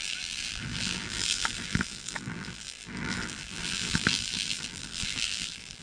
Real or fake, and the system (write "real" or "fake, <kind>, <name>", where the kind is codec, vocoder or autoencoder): fake, vocoder, BigVGAN v2